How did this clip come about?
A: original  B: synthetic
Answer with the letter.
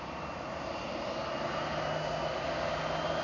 A